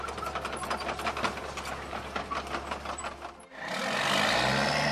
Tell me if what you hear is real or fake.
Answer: real